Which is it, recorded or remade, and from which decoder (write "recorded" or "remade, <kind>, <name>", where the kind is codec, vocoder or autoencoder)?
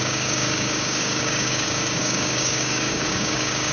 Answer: remade, codec, DAC